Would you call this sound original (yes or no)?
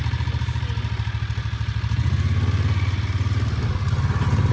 yes